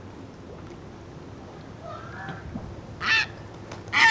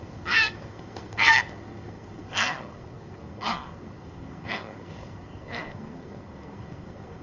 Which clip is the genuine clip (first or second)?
first